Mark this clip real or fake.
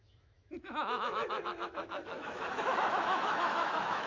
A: fake